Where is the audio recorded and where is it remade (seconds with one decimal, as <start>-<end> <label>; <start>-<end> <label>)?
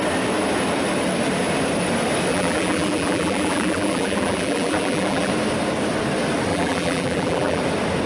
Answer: 0.0-2.3 recorded; 2.3-5.3 remade; 5.3-6.5 recorded; 6.5-7.6 remade; 7.6-8.1 recorded